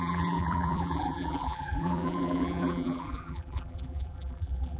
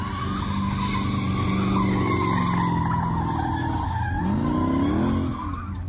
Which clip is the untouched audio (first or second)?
second